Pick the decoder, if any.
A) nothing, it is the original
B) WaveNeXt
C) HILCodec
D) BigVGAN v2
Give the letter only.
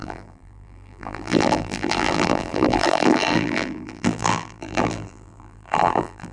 D